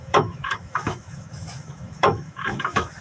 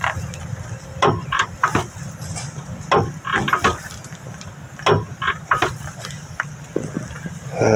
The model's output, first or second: first